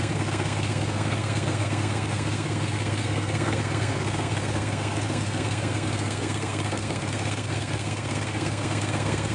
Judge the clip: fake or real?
fake